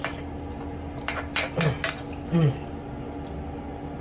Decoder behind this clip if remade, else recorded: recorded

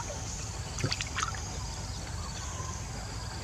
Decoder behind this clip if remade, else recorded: recorded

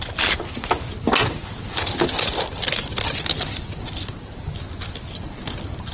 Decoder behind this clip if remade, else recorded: recorded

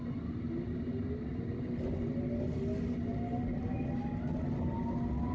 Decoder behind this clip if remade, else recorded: recorded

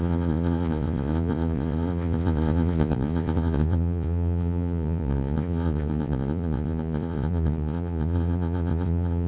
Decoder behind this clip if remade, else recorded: remade, vocoder, Vocos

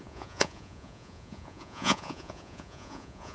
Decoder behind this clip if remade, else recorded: remade, vocoder, Vocos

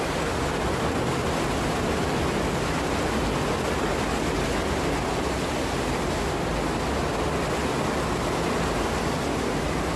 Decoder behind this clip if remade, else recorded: recorded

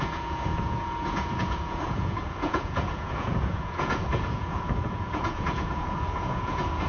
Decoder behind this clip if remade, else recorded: remade, vocoder, Vocos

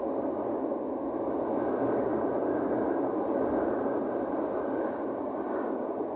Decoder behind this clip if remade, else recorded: recorded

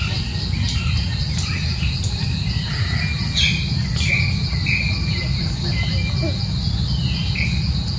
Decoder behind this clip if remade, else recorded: recorded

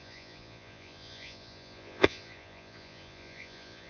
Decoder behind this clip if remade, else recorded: remade, vocoder, Vocos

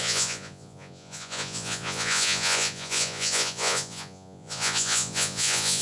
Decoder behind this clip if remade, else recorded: remade, vocoder, Vocos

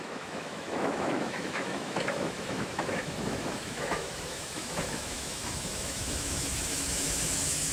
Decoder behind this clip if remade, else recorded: remade, autoencoder, DAC-VAE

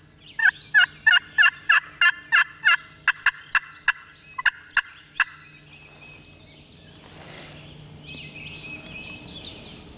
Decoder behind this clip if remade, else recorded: recorded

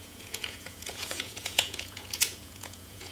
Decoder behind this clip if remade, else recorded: remade, vocoder, Vocos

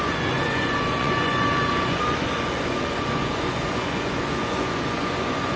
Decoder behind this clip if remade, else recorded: remade, vocoder, Vocos